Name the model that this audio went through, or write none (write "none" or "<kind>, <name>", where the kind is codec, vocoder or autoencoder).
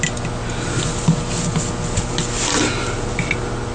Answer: none